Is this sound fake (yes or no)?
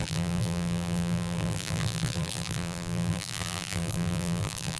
yes